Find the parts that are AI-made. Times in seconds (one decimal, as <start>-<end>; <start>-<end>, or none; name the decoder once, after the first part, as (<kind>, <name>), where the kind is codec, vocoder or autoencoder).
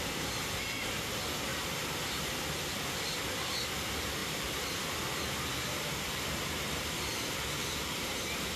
0.0-1.5 (vocoder, BigVGAN v2); 2.3-8.6